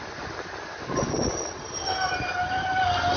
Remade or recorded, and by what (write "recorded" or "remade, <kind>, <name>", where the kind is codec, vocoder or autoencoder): recorded